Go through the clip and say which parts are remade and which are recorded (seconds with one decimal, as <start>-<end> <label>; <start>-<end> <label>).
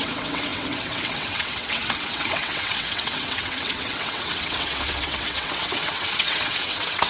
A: 0.0-7.1 remade